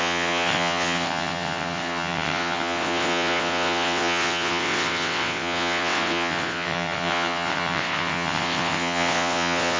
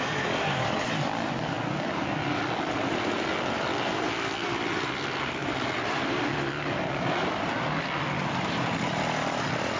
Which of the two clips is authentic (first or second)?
second